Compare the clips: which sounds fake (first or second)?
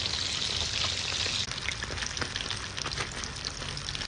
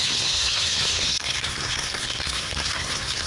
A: second